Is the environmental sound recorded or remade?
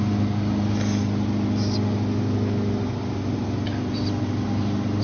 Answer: recorded